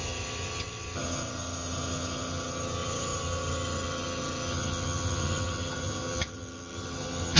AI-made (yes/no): yes